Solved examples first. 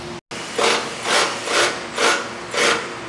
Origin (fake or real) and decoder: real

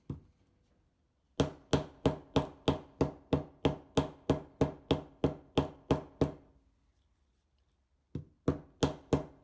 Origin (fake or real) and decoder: real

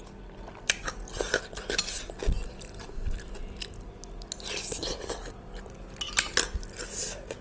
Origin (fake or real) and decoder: real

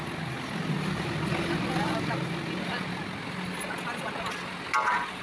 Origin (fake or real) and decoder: real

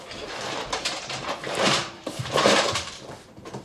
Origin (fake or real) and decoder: fake, vocoder, BigVGAN v2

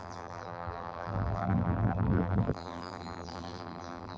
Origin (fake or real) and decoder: fake, vocoder, BigVGAN v2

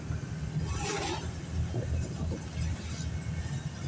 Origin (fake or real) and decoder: real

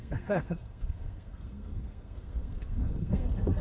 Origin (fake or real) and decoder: fake, codec, SNAC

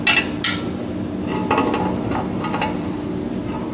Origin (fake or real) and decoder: real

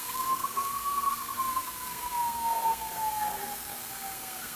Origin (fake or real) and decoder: fake, codec, SNAC